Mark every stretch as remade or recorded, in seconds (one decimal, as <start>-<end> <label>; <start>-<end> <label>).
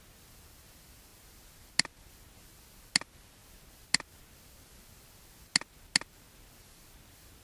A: 0.0-7.4 recorded